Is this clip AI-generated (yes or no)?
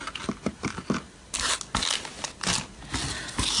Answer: no